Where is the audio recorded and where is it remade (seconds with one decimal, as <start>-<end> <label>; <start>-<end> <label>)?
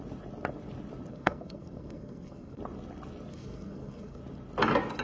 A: 0.0-1.1 recorded; 1.1-2.6 remade; 2.6-3.3 recorded; 3.3-4.2 remade; 4.2-5.0 recorded